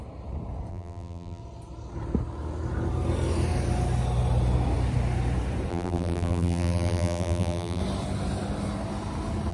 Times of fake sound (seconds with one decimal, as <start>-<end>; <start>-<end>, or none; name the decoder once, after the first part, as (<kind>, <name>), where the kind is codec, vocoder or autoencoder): 0.7-1.4 (vocoder, BigVGAN v2); 5.7-7.8